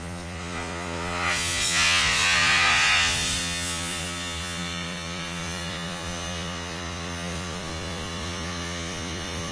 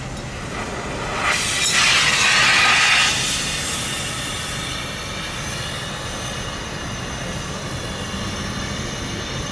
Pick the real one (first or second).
second